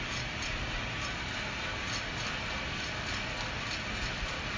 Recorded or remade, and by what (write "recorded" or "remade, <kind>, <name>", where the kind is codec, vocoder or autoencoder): recorded